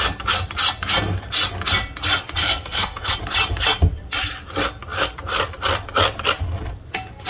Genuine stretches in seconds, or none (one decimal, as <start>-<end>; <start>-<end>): 0.0-2.4; 3.1-7.3